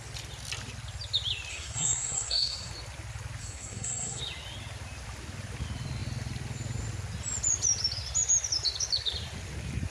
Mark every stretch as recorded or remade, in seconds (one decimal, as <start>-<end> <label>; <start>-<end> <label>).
0.0-1.5 recorded; 1.5-2.7 remade; 2.7-3.4 recorded; 3.4-4.2 remade; 4.2-9.9 recorded